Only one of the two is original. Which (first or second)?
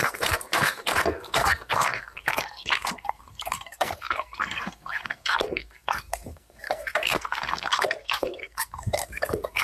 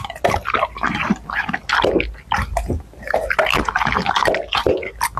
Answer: second